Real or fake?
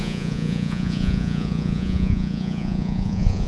fake